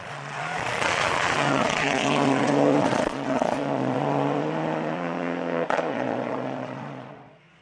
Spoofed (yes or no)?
yes